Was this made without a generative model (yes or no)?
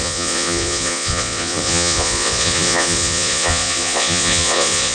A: no